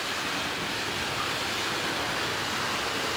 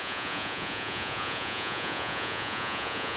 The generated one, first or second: second